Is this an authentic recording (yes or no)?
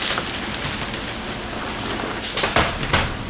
yes